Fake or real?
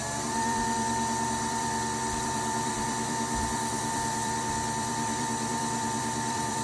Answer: fake